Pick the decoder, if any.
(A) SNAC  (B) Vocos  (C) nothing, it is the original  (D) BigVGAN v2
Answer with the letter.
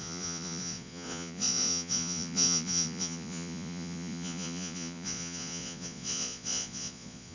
B